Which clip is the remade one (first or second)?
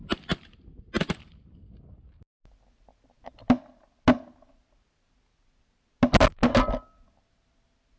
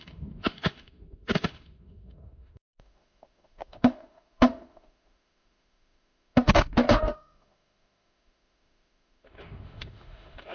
second